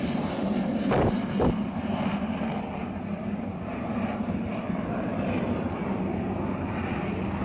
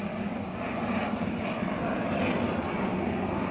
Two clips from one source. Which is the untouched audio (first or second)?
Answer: second